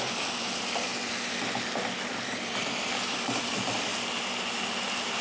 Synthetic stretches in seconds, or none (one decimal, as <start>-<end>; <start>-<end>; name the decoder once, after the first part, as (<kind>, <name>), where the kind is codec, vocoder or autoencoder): 0.0-0.9 (vocoder, BigVGAN v2); 2.0-3.9